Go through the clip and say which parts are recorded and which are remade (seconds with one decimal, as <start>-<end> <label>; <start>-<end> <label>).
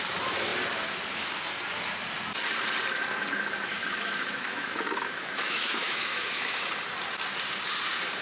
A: 0.0-3.7 recorded; 3.7-6.7 remade; 6.7-8.2 recorded